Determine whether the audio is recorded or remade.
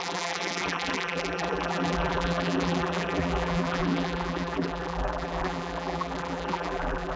remade